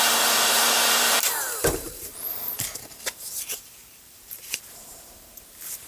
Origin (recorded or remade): remade